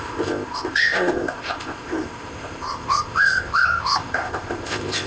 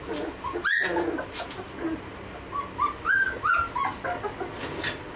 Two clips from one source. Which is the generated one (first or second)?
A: first